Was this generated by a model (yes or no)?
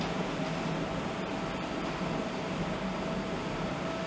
no